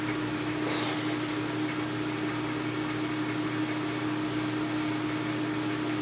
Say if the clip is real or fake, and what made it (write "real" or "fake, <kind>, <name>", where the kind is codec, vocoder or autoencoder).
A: real